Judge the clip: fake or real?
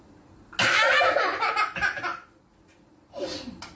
real